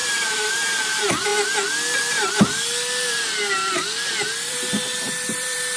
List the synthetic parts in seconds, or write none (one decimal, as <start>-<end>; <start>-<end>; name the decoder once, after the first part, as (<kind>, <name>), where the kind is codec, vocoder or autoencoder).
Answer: 0.0-1.3 (vocoder, BigVGAN v2); 4.5-5.8